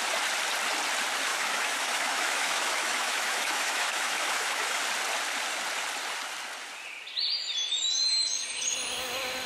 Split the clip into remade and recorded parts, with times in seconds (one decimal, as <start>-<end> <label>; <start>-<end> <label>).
0.0-1.3 recorded; 1.3-4.8 remade; 4.8-9.5 recorded